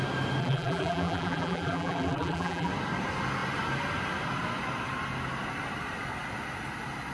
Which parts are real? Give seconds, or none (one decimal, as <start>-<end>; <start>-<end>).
0.0-0.4; 2.7-7.1